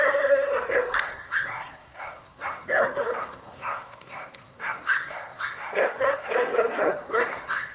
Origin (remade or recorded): remade